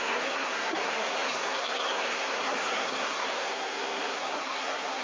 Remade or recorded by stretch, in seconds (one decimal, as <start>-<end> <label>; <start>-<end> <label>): 0.0-5.0 remade